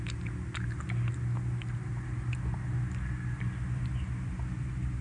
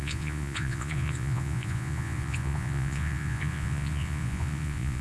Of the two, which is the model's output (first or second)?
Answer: second